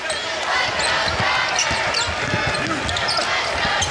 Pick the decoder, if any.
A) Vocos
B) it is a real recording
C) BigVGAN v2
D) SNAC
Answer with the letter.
B